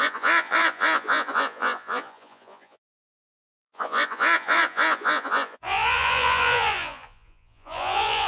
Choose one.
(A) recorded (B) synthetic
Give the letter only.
B